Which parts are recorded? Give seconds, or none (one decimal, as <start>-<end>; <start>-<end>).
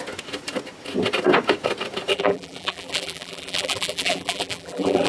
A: 0.0-2.1